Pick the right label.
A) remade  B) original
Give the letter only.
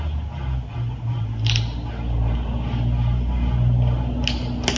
B